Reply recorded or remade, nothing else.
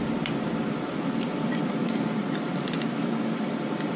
remade